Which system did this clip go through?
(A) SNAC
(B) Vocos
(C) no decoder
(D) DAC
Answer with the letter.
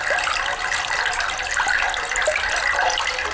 C